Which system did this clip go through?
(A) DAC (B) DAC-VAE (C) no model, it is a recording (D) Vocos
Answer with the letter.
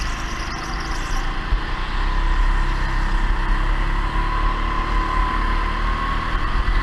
C